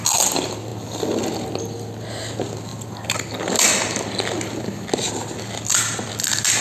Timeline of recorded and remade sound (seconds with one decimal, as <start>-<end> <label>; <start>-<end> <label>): 0.0-6.6 recorded